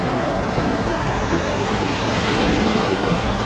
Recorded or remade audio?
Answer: remade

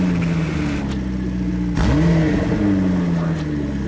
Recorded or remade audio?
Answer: recorded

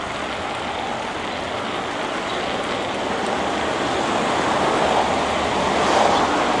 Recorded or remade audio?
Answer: recorded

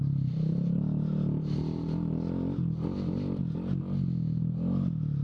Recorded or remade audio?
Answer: recorded